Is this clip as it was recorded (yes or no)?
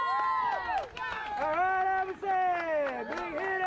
yes